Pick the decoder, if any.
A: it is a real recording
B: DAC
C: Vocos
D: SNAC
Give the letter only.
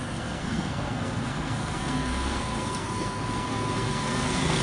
D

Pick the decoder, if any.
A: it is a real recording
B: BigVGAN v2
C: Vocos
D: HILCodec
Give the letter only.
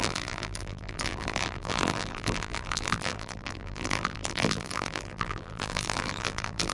B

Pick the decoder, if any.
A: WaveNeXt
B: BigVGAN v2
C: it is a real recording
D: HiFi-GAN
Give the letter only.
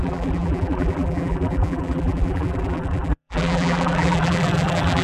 B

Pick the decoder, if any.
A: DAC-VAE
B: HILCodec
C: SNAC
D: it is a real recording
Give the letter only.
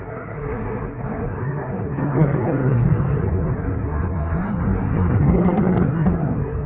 C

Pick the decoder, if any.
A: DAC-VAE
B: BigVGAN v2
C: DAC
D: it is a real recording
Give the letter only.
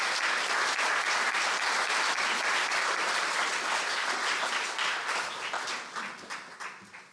D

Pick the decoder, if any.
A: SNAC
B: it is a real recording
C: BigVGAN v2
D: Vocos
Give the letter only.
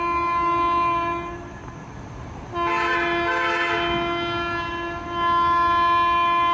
B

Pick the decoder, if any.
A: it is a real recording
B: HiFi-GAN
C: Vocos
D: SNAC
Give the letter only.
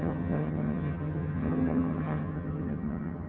B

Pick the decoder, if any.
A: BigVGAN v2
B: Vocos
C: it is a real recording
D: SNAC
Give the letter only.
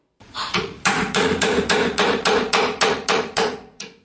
B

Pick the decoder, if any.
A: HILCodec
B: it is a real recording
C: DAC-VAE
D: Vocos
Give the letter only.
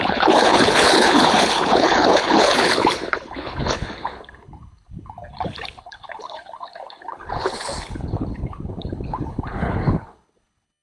A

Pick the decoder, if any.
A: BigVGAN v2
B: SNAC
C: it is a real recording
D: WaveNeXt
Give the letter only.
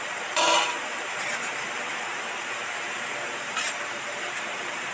A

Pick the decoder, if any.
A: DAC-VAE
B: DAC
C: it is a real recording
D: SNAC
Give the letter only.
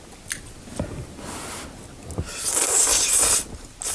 C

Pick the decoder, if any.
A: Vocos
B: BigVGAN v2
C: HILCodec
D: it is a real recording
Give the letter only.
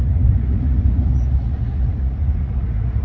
A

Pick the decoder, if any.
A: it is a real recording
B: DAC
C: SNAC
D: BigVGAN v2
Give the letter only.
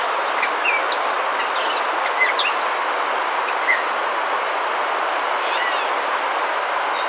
A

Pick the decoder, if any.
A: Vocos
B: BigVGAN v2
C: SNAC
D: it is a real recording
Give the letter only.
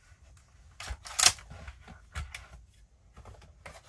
D